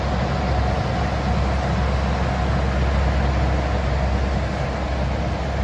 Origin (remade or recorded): recorded